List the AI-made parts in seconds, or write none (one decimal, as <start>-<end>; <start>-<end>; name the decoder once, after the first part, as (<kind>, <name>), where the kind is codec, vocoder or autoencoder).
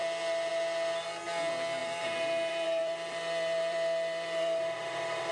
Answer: 1.8-5.3 (vocoder, BigVGAN v2)